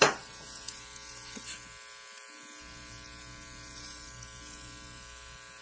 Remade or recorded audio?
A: recorded